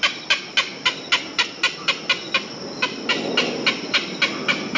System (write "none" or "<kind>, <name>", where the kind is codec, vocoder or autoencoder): none